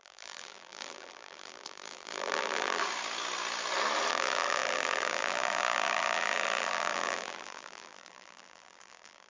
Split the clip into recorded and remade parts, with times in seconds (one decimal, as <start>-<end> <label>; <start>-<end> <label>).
0.0-2.8 remade; 2.8-4.1 recorded; 4.1-9.3 remade